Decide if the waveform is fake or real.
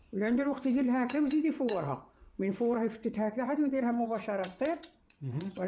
fake